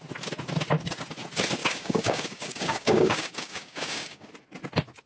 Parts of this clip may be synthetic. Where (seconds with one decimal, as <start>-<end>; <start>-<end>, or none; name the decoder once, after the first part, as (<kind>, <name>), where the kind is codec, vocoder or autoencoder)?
1.6-4.3 (codec, DAC)